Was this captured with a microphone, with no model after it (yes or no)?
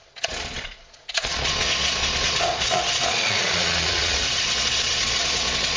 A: no